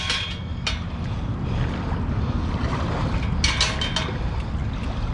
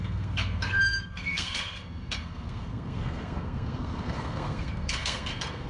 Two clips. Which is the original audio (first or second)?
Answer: first